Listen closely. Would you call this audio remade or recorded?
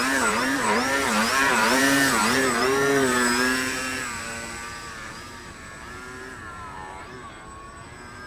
remade